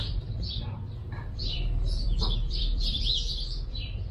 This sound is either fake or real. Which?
fake